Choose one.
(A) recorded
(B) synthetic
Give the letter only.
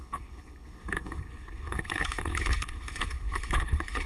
B